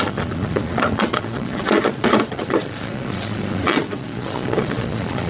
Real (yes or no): no